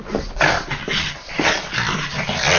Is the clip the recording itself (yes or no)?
yes